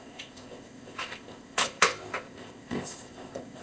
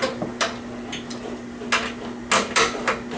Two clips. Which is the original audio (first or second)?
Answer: second